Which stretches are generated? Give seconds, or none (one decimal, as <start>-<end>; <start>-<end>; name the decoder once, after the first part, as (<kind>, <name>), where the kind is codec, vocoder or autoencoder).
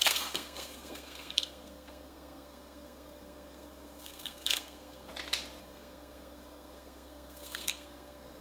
0.0-5.1 (codec, SNAC); 5.6-8.4